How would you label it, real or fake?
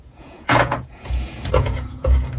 fake